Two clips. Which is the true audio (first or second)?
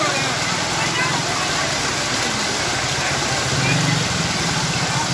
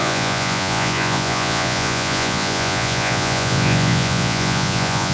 first